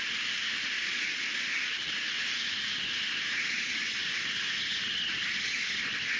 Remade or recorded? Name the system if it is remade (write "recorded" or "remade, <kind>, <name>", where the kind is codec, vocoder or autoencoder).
recorded